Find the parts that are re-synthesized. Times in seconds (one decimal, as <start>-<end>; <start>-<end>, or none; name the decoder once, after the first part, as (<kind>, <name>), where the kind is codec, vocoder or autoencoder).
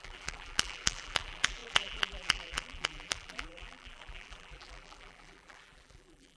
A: 0.0-6.4 (vocoder, BigVGAN v2)